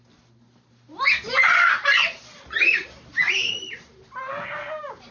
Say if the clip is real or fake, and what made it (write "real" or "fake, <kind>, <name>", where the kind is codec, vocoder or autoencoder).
real